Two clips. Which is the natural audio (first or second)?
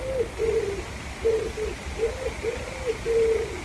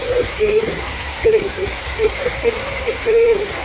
first